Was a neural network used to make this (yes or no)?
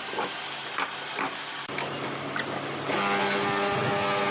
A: no